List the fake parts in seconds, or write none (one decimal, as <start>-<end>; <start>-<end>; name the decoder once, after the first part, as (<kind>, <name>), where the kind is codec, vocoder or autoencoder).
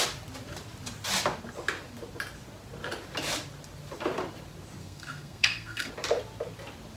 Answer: 4.8-5.9 (codec, SNAC)